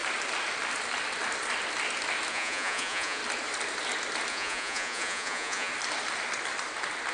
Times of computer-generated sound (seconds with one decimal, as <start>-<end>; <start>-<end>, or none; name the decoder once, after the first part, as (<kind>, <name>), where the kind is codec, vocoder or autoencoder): 2.3-3.2 (vocoder, Vocos); 4.3-5.7